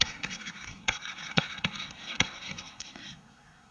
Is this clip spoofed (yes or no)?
yes